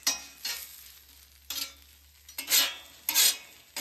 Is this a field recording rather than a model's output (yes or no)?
yes